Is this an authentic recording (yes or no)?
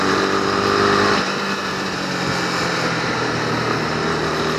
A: yes